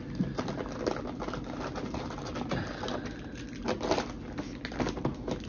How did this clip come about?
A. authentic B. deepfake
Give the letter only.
A